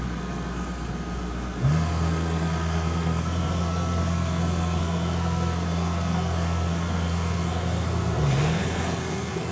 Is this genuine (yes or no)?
no